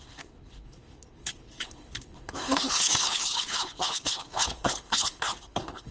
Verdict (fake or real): fake